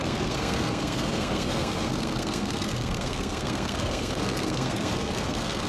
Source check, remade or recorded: remade